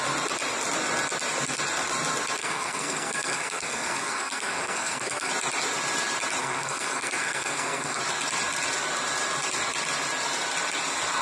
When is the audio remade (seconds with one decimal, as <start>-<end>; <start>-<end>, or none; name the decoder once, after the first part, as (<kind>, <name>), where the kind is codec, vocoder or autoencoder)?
2.4-5.3 (codec, SNAC); 6.4-8.0